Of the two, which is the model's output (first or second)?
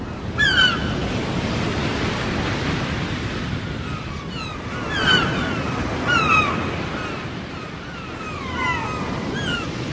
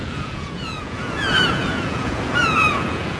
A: second